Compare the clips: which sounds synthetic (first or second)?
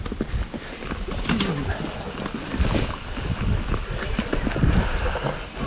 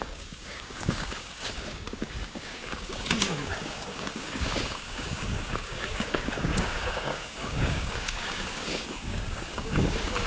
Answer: second